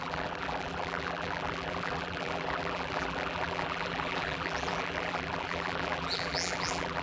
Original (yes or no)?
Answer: no